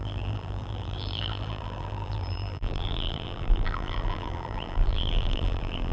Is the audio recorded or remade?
remade